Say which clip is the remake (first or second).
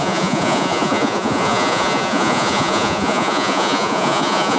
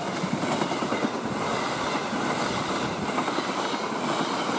first